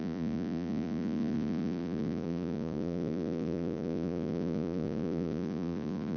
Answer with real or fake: fake